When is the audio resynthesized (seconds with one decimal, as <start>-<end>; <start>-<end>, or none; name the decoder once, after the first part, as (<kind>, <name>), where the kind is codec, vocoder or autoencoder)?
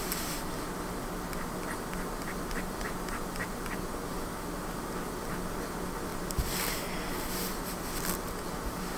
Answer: none